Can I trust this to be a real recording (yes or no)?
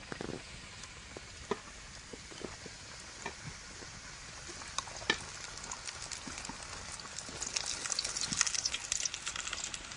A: yes